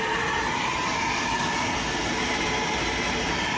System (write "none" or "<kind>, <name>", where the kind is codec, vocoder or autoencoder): none